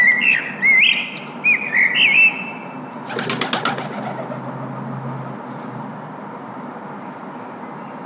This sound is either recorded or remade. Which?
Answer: recorded